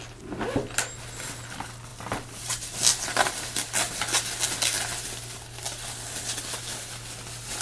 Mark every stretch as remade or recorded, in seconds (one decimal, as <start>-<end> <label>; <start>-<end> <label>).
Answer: 0.0-7.6 recorded